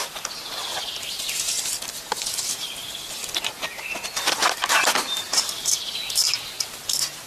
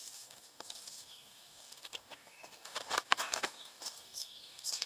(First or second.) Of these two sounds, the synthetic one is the second